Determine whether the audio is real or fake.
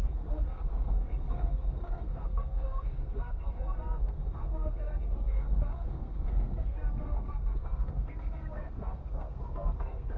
fake